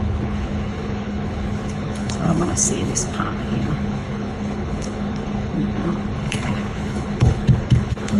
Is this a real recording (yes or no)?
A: no